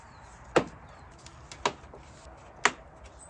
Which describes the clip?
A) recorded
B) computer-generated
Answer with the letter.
A